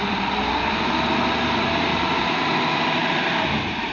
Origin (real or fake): real